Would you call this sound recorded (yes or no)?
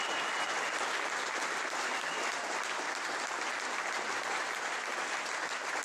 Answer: yes